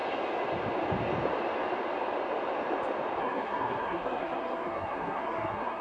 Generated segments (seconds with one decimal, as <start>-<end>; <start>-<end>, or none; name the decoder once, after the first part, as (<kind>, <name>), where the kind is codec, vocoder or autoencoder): 3.2-5.8 (codec, SNAC)

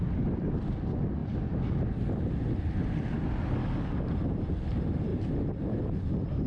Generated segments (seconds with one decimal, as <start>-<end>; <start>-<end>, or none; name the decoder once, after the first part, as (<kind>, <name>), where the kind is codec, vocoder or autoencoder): 3.6-4.1 (codec, DAC)

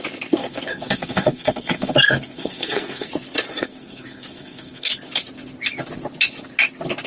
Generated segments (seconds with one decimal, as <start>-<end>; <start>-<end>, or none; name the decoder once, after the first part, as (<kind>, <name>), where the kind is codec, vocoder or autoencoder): 0.4-3.1 (codec, SNAC); 3.5-4.9

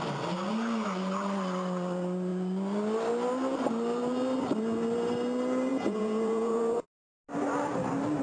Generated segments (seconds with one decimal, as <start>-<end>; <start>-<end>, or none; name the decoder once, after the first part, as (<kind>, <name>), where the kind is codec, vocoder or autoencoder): 5.7-7.1 (vocoder, Vocos)

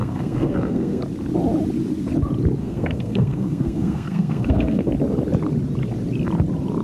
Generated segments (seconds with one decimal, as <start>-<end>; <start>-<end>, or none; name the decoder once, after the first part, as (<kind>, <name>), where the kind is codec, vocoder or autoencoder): 0.0-1.0 (codec, SNAC); 2.6-4.9

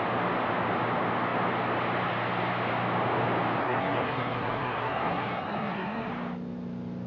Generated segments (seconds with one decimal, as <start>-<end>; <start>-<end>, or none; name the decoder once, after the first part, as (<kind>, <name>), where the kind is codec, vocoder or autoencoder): 3.6-6.1 (codec, SNAC)

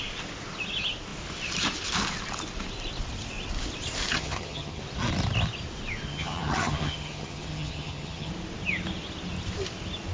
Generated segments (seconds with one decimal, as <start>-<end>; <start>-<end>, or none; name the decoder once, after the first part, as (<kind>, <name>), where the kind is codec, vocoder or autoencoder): 4.1-4.8 (vocoder, HiFi-GAN); 6.1-8.3

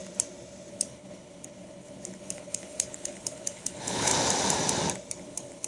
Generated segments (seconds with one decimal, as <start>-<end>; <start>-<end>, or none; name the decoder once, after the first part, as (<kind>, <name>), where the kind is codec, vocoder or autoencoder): 0.7-4.1 (codec, HILCodec); 5.2-5.7